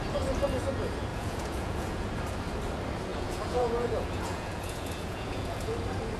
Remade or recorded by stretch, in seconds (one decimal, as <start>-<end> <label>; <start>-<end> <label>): 0.0-1.1 recorded; 1.1-2.1 remade; 2.1-3.1 recorded; 3.1-5.7 remade; 5.7-6.2 recorded

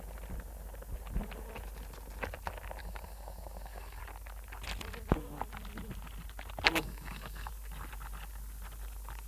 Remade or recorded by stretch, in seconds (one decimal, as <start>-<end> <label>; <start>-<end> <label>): 0.0-2.8 recorded; 2.8-4.0 remade; 4.0-6.8 recorded; 6.8-7.5 remade; 7.5-9.3 recorded